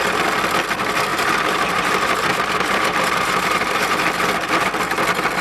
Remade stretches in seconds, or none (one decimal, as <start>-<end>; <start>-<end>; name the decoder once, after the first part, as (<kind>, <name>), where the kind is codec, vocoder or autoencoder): 1.1-4.2 (vocoder, BigVGAN v2)